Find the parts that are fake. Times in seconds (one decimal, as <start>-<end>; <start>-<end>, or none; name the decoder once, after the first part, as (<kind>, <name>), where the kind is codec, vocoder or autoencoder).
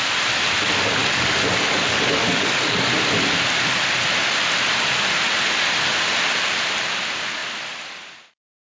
1.0-2.9 (codec, DAC)